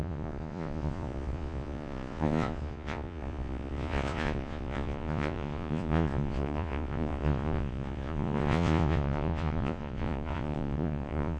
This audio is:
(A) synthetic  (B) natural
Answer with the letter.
A